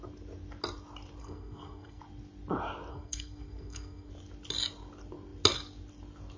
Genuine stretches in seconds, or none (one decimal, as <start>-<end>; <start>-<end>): 0.0-1.2; 2.0-2.9; 4.1-6.4